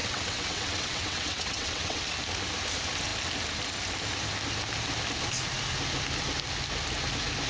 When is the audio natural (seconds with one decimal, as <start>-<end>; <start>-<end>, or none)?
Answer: 2.0-7.5